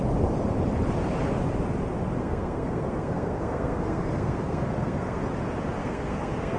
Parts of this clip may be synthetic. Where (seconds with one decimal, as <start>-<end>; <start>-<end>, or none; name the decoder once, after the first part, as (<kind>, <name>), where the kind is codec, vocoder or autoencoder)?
2.2-5.2 (codec, SNAC); 5.8-6.6